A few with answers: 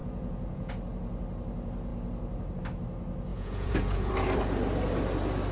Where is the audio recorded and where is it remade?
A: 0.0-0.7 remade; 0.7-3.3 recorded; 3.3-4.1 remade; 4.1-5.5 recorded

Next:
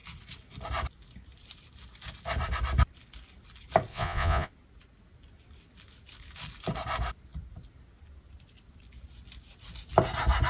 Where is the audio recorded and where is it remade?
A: 0.0-3.9 recorded; 3.9-4.5 remade; 4.5-10.5 recorded

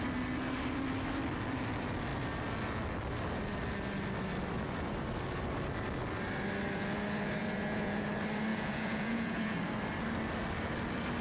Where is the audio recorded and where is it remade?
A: 0.0-7.4 recorded; 7.4-8.1 remade; 8.1-8.5 recorded; 8.5-9.6 remade; 9.6-11.2 recorded

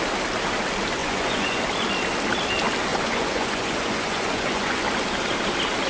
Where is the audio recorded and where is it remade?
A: 0.0-1.0 recorded; 1.0-1.6 remade; 1.6-2.9 recorded; 2.9-4.8 remade; 4.8-5.9 recorded

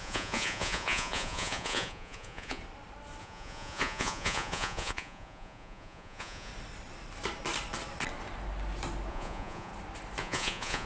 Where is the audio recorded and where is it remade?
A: 0.0-2.6 remade; 2.6-3.2 recorded; 3.2-6.5 remade; 6.5-9.1 recorded; 9.1-9.7 remade; 9.7-10.2 recorded; 10.2-10.9 remade

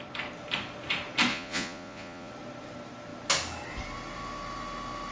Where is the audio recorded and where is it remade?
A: 0.0-1.3 recorded; 1.3-2.3 remade; 2.3-5.1 recorded

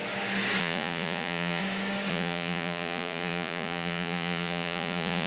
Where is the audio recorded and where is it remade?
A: 0.0-0.6 recorded; 0.6-1.6 remade; 1.6-2.1 recorded; 2.1-5.3 remade

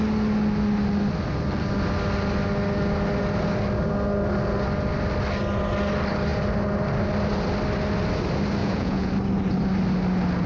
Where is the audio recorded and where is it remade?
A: 0.0-8.6 recorded; 8.6-9.1 remade; 9.1-10.5 recorded